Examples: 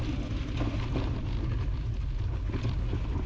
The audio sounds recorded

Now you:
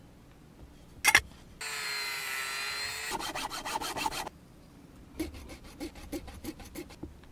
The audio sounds recorded